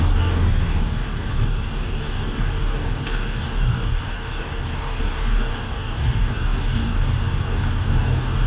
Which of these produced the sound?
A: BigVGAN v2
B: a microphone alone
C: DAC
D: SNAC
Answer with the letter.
C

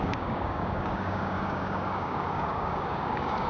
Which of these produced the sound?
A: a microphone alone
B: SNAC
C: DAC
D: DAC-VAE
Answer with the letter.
C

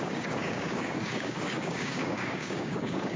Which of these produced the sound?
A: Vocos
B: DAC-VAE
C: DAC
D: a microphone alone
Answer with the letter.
C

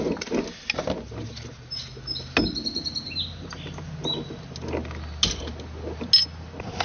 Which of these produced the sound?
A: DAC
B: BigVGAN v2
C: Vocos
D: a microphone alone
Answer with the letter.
D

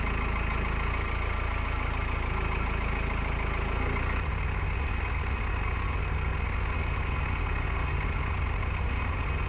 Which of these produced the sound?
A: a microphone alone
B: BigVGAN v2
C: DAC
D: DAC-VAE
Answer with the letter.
A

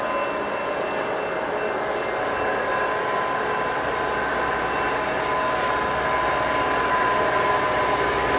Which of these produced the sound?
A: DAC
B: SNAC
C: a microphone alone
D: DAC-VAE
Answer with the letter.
C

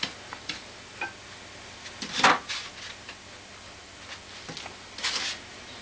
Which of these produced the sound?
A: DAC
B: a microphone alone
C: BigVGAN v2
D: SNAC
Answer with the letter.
B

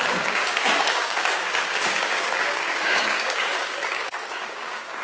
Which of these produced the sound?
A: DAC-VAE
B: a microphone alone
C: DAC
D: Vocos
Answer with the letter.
C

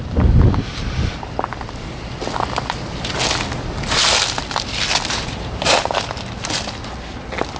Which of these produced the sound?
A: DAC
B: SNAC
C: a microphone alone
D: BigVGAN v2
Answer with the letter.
C